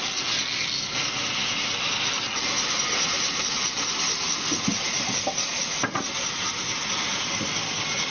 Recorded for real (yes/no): yes